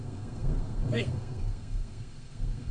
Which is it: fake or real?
fake